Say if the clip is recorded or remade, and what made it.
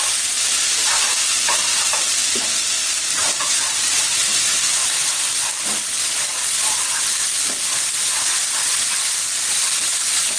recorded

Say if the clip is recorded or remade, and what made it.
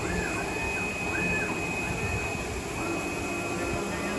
recorded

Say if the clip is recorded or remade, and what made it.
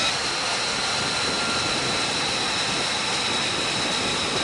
recorded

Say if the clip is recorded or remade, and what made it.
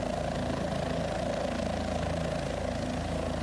recorded